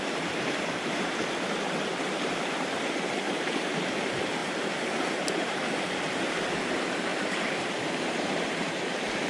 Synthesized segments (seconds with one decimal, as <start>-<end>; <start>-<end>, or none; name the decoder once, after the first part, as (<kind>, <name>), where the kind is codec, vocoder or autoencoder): 0.0-9.3 (vocoder, BigVGAN v2)